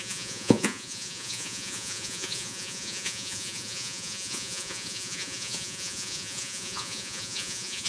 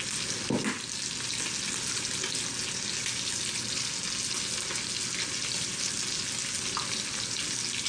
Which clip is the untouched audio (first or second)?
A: second